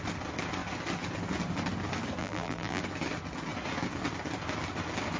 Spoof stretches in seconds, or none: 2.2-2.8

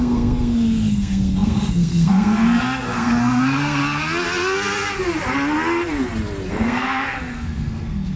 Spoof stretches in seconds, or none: 0.0-3.8; 6.5-8.2

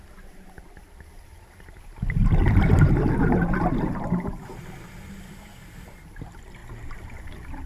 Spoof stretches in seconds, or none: 2.4-4.6

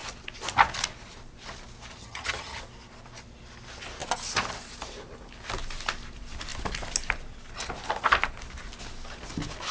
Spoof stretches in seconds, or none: 2.0-2.6